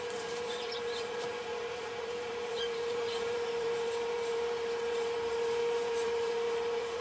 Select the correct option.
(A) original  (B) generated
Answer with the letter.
B